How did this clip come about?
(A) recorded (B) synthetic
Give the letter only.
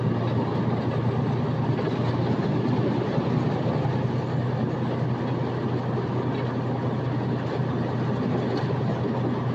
A